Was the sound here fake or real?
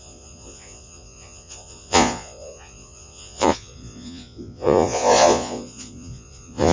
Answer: fake